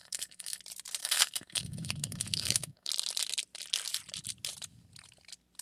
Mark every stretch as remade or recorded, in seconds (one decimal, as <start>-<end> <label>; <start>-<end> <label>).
0.0-0.6 remade; 0.6-1.0 recorded; 1.0-2.9 remade; 2.9-5.6 recorded